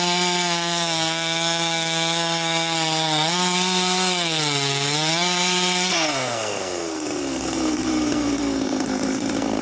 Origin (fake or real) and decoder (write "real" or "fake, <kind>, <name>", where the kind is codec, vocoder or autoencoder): fake, codec, SNAC